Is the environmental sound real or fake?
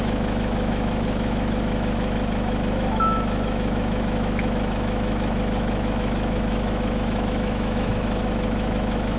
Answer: fake